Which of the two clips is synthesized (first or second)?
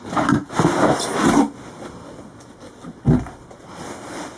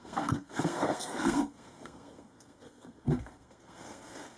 second